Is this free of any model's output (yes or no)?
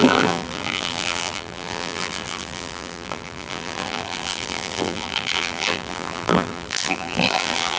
no